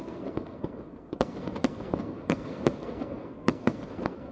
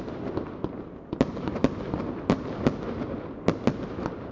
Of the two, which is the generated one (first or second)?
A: first